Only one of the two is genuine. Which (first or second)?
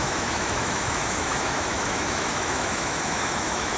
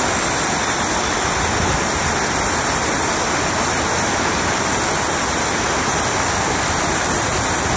second